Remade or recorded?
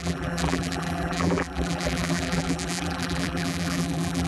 remade